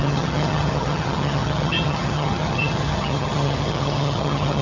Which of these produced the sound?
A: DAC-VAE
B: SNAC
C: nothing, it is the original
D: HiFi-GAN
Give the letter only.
D